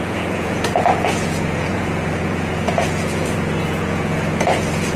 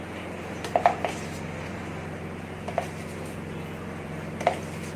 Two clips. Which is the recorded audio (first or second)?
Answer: second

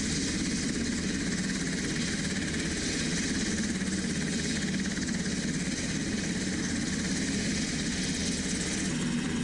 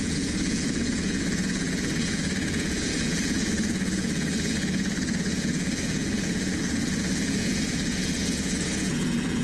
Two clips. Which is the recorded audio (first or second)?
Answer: first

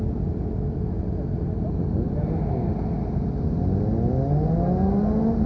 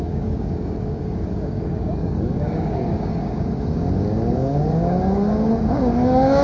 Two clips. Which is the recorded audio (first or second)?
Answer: first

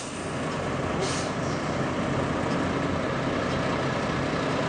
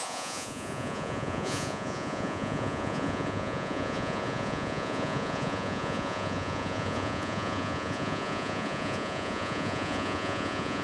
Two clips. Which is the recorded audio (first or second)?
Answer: first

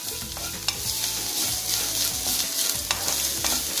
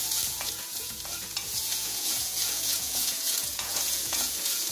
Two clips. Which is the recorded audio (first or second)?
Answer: first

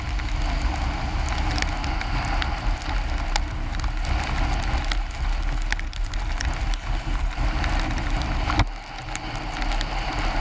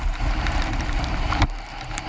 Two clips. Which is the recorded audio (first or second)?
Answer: first